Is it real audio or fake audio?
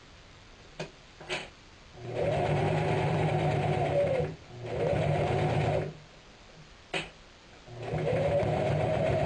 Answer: real